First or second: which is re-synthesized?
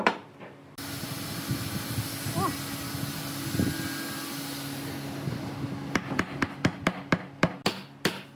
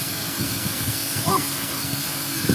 second